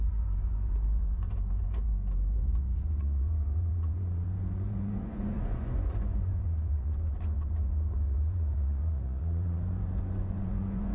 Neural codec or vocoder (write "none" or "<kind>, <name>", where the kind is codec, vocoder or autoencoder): vocoder, Vocos